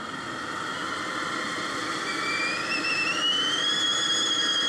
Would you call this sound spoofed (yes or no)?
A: no